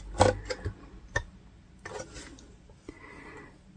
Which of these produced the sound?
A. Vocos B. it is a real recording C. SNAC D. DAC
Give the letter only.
B